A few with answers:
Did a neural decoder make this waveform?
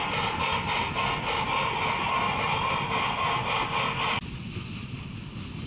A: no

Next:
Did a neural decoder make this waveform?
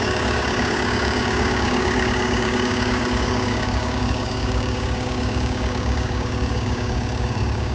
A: yes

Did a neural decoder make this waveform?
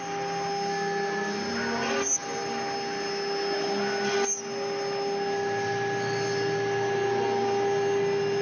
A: no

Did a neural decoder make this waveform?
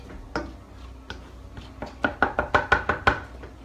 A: no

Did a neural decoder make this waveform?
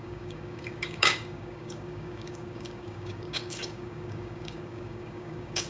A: yes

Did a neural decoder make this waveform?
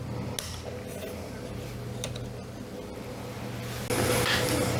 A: no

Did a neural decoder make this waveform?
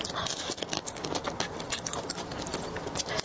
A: no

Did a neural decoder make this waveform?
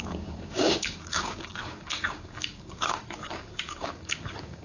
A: yes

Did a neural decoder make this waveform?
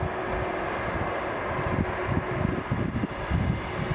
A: no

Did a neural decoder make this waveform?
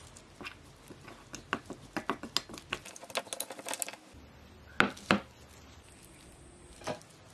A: no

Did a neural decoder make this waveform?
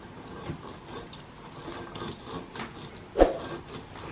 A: no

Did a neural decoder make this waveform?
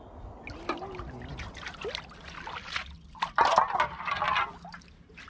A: no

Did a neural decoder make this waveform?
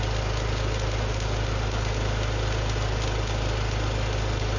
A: no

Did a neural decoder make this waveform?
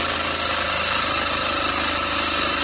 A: no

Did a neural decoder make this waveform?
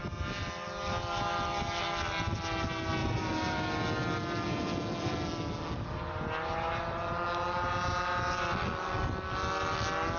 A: no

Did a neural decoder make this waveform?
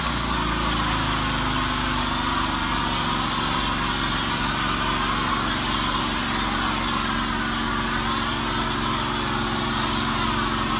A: no